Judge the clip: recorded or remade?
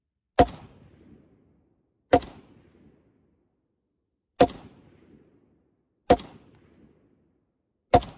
recorded